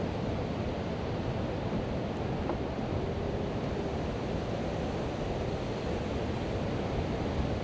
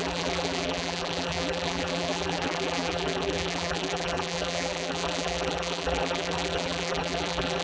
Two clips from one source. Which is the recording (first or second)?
first